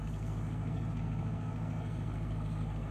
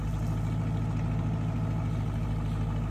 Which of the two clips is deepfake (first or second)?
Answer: first